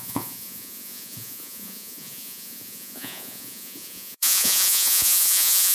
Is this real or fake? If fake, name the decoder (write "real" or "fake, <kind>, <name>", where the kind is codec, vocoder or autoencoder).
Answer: fake, vocoder, Vocos